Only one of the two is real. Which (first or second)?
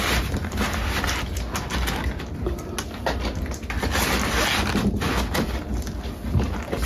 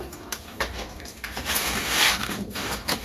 first